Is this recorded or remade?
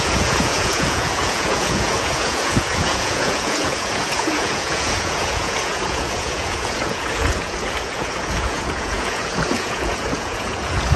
remade